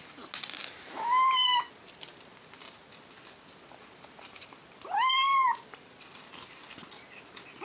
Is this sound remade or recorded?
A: recorded